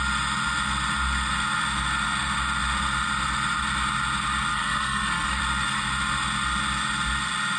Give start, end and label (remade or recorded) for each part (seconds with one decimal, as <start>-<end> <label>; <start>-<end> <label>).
0.0-4.5 recorded; 4.5-5.4 remade; 5.4-7.6 recorded